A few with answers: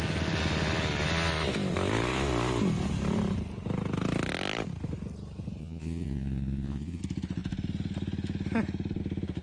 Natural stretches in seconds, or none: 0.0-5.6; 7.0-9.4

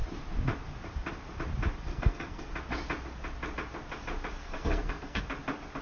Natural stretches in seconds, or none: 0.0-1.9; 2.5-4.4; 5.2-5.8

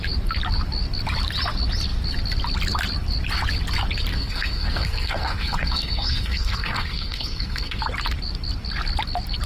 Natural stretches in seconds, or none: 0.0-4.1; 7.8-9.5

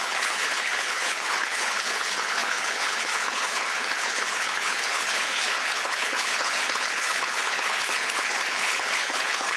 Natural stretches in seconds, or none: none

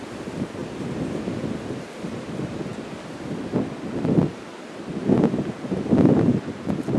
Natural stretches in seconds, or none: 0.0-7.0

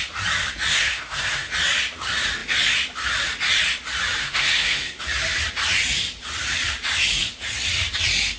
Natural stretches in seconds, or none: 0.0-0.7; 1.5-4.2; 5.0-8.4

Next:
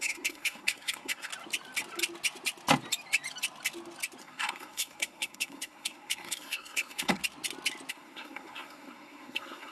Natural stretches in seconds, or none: 1.3-4.2; 7.2-7.9

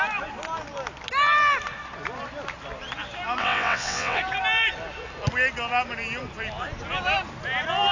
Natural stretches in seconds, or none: 0.0-3.4; 4.2-7.9